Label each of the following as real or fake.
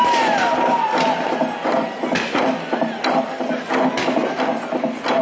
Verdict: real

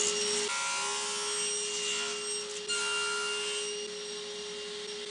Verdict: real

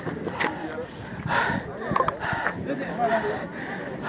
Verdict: real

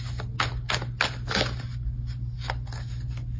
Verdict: real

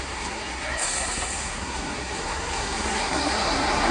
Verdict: fake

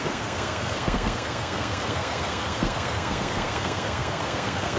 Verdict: fake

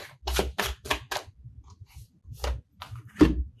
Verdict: real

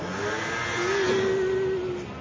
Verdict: real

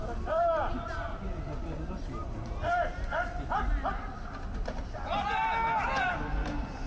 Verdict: real